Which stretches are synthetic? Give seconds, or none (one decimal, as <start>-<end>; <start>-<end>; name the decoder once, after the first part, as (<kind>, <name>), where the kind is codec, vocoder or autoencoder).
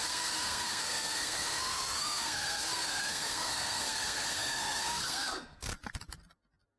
0.0-5.7 (codec, SNAC)